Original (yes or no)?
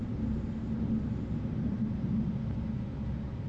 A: yes